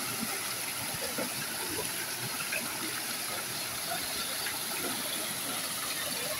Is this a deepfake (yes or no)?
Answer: no